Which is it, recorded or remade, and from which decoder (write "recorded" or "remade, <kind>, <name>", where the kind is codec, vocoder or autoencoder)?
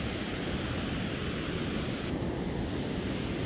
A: recorded